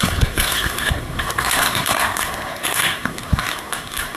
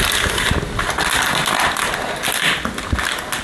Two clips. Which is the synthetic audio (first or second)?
first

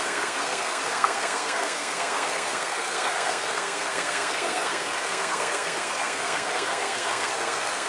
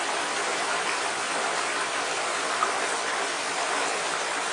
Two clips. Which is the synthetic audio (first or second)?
first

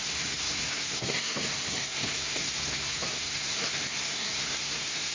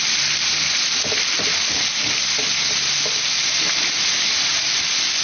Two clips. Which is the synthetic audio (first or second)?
first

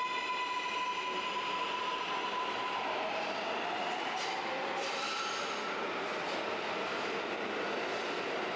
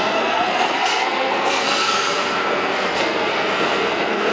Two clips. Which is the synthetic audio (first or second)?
second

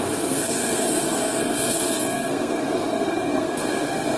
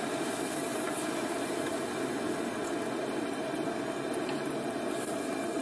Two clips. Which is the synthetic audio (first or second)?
first